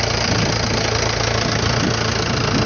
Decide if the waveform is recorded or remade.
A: recorded